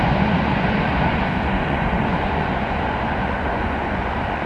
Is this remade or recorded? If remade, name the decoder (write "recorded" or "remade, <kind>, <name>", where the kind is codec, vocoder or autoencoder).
remade, vocoder, Vocos